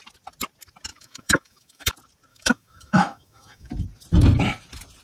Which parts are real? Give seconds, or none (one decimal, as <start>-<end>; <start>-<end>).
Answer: 0.0-0.9; 1.9-2.3; 3.7-5.0